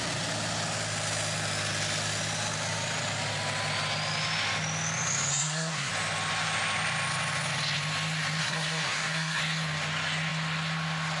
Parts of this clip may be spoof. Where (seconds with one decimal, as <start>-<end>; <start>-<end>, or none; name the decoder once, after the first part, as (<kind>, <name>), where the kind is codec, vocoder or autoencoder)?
5.3-5.9 (codec, SNAC); 8.4-9.4